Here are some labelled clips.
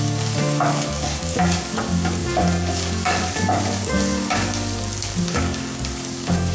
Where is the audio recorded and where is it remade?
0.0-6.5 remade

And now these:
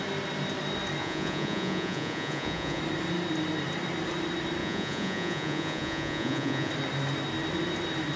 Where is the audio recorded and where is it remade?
0.0-1.0 recorded; 1.0-2.8 remade; 2.8-4.6 recorded; 4.6-6.7 remade; 6.7-8.2 recorded

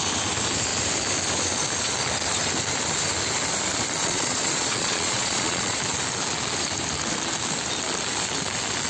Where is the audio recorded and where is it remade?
0.0-4.0 recorded; 4.0-5.8 remade; 5.8-8.9 recorded

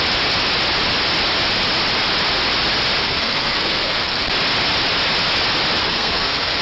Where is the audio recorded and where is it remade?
0.0-3.0 recorded; 3.0-4.3 remade; 4.3-5.8 recorded; 5.8-6.6 remade

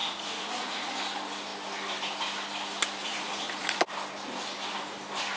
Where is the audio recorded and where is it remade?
0.0-0.9 remade; 0.9-3.0 recorded; 3.0-3.8 remade; 3.8-5.4 recorded

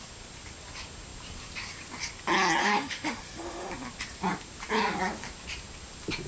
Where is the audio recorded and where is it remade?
0.0-2.6 recorded; 2.6-3.7 remade; 3.7-6.3 recorded

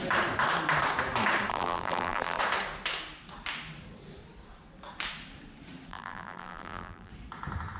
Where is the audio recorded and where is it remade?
0.0-1.5 recorded; 1.5-2.4 remade; 2.4-5.9 recorded; 5.9-7.1 remade; 7.1-7.8 recorded